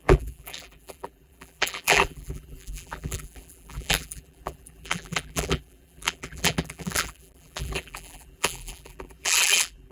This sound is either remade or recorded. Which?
remade